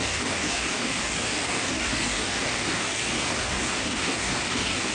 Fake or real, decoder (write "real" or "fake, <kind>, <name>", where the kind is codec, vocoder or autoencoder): fake, codec, DAC